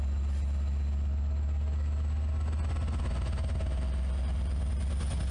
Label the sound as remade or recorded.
recorded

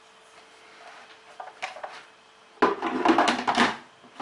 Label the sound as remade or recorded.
recorded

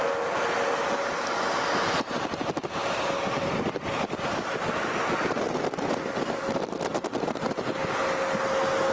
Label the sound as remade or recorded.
recorded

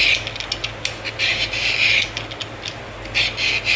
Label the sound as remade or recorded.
recorded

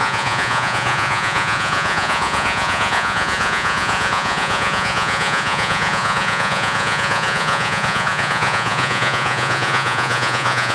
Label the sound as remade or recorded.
remade